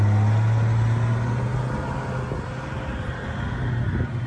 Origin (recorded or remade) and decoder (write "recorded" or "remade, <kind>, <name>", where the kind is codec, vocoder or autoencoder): recorded